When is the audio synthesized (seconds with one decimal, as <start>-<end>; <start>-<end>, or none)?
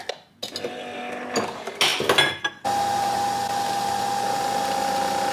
none